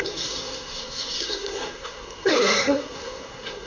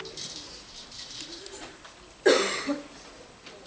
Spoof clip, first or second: first